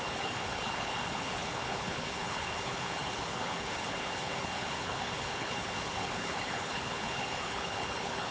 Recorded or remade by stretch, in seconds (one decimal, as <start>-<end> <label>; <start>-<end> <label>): 0.0-8.3 remade